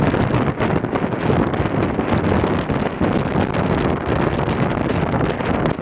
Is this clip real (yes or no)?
yes